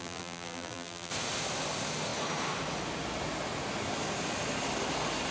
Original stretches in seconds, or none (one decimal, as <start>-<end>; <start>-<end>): 1.1-5.3